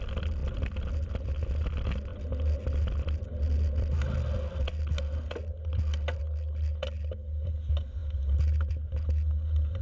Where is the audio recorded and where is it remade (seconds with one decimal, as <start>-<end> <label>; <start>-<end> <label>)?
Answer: 0.0-9.8 recorded